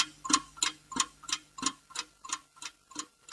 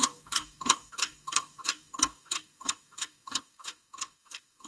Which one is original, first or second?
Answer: first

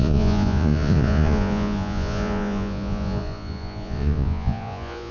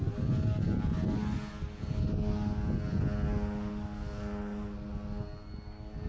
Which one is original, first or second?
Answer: second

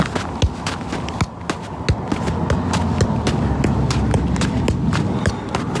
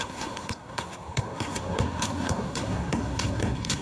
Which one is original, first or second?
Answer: first